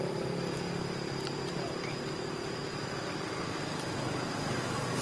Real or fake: real